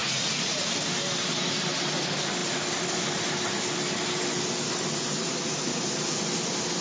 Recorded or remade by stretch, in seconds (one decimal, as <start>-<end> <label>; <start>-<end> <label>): 0.0-0.7 remade; 0.7-6.8 recorded

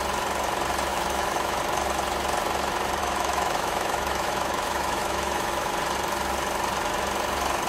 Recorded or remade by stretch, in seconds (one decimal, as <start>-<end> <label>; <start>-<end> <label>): 0.0-0.9 recorded; 0.9-1.6 remade; 1.6-3.0 recorded; 3.0-5.7 remade; 5.7-7.7 recorded

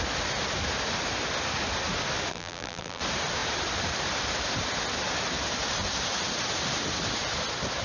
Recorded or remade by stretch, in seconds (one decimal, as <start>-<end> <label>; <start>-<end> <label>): 0.0-2.3 recorded; 2.3-3.0 remade; 3.0-7.8 recorded